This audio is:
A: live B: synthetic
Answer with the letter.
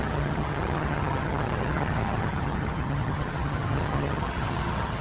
B